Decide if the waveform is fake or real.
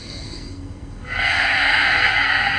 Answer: fake